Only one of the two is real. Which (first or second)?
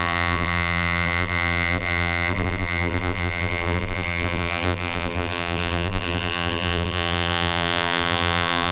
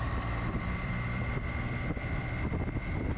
second